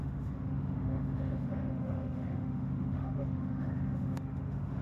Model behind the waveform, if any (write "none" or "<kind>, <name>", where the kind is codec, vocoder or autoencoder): autoencoder, DAC-VAE